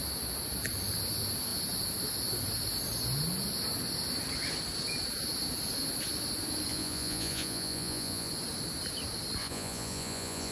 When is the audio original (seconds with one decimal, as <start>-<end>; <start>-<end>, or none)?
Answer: 0.0-6.7; 8.3-9.4